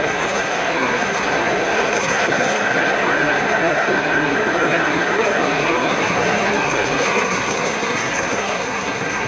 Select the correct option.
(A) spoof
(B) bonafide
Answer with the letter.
A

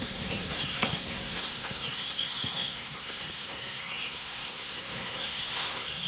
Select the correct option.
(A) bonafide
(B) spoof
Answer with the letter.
B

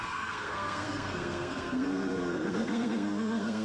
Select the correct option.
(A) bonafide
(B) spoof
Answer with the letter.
B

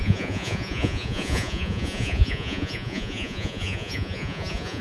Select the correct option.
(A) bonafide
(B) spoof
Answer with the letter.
B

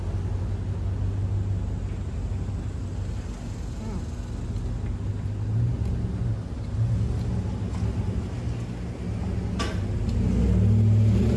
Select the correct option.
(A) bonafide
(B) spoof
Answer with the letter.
A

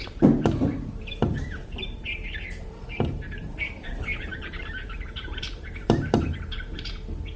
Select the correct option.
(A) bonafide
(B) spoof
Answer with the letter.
B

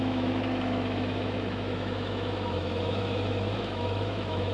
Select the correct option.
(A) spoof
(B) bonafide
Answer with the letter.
A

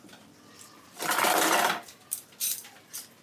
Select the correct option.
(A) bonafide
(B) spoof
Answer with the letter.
B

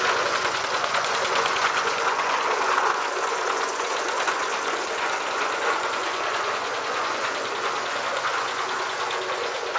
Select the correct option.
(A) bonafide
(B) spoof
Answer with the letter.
B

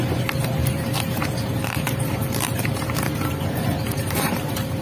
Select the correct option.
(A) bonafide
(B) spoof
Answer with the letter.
B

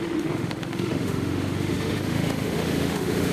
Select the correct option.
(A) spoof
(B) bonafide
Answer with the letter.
A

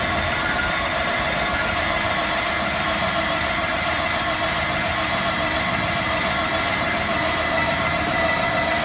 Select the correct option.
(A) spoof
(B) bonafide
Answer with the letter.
A